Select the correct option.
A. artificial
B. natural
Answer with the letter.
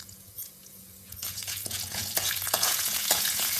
A